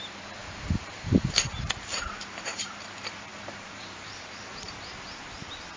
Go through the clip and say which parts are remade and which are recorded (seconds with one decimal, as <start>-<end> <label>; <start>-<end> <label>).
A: 0.0-0.4 recorded; 0.4-2.8 remade; 2.8-3.3 recorded; 3.3-4.7 remade; 4.7-5.8 recorded